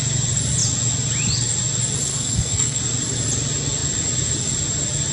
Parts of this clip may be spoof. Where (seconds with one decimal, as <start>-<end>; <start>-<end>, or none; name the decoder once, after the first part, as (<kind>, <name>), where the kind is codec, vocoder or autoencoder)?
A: 2.1-2.8 (codec, SNAC)